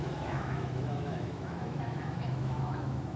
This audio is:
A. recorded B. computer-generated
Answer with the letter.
B